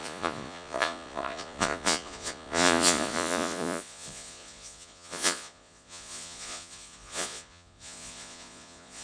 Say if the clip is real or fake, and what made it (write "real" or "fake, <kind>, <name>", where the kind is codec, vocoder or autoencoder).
fake, vocoder, Vocos